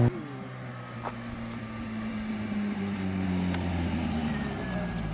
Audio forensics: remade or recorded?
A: recorded